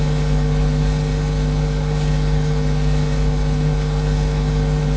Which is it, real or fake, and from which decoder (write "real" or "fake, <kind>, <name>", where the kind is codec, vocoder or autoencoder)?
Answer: fake, codec, HILCodec